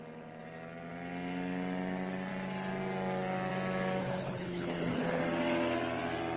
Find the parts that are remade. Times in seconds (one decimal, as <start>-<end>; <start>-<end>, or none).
4.0-5.2